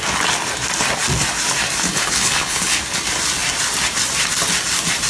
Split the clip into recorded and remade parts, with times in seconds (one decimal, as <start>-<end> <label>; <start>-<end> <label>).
0.0-1.9 recorded; 1.9-2.8 remade; 2.8-5.1 recorded

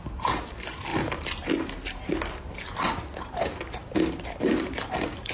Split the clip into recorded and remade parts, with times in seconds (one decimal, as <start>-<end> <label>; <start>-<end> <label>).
0.0-5.3 recorded